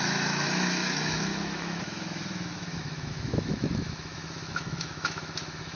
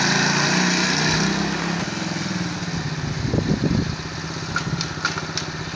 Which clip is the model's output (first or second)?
first